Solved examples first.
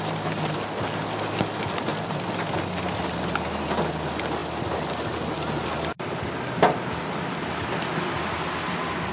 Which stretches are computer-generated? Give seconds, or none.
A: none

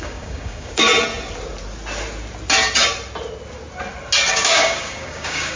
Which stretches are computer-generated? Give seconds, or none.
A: 0.0-0.9 (codec, DAC); 4.3-5.6

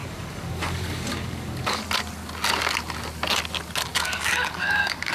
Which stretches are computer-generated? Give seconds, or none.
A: 0.0-1.8 (codec, DAC); 3.9-5.1